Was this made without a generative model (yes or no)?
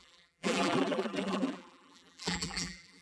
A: no